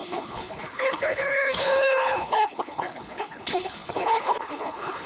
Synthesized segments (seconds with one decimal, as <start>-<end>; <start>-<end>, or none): 0.0-5.1